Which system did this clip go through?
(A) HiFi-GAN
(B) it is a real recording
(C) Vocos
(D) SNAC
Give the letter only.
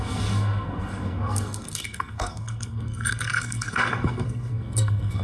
D